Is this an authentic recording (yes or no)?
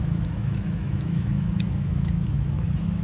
no